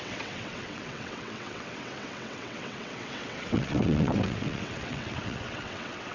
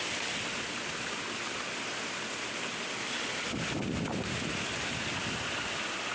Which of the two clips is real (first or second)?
second